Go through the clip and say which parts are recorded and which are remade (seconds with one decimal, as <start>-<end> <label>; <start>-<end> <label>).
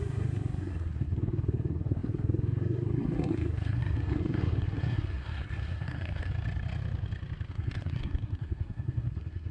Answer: 0.0-6.3 remade; 6.3-7.5 recorded; 7.5-9.5 remade